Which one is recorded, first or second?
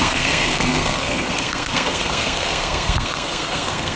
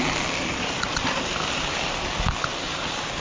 second